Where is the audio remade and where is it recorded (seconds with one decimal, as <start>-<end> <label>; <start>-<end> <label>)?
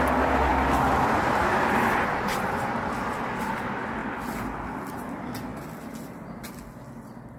0.0-7.4 recorded